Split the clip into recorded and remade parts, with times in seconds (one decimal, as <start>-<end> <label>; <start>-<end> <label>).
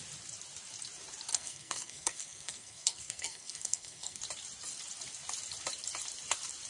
0.0-1.3 recorded; 1.3-4.2 remade; 4.2-6.7 recorded